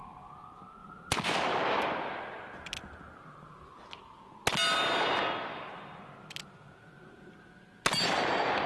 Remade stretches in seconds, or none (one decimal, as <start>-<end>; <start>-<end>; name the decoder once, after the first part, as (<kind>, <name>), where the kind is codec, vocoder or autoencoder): none